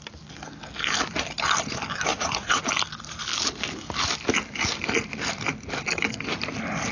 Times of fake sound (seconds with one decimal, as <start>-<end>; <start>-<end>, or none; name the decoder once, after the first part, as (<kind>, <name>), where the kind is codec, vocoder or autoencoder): 2.1-2.6 (vocoder, Vocos)